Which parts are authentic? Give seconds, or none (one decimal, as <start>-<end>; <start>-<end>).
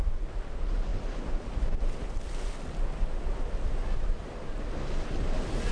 0.0-5.7